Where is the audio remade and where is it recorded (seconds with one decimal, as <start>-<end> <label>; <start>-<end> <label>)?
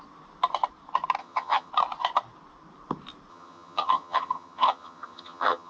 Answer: 0.0-1.2 recorded; 1.2-1.7 remade; 1.7-3.3 recorded; 3.3-5.7 remade